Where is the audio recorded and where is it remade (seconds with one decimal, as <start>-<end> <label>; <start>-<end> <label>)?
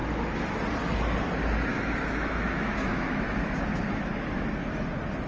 0.0-1.7 recorded; 1.7-4.7 remade; 4.7-5.3 recorded